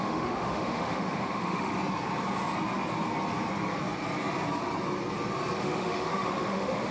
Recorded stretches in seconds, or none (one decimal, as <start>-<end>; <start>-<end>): 1.7-5.6